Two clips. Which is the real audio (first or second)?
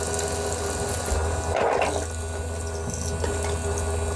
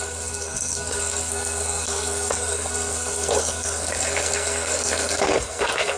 first